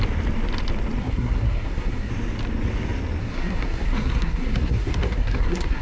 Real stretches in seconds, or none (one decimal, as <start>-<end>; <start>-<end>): 0.0-1.0; 2.1-3.2